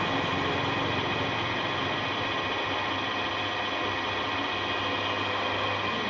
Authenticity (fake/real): real